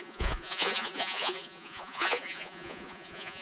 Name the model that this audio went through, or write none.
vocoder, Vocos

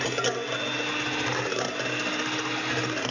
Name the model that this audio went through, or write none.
none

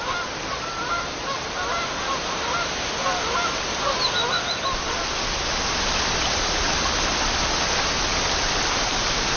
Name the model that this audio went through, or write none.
none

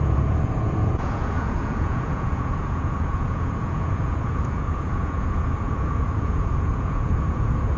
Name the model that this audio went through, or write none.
vocoder, Vocos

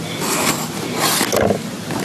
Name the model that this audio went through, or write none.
none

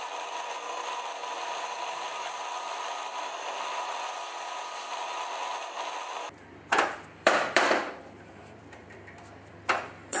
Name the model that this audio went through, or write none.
vocoder, BigVGAN v2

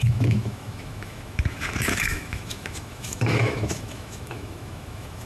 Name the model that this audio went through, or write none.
autoencoder, DAC-VAE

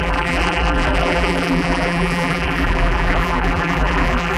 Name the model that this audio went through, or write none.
vocoder, BigVGAN v2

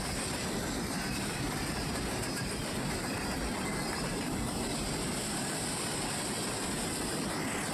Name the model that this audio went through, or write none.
vocoder, BigVGAN v2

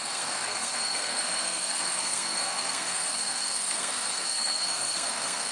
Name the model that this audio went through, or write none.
codec, SNAC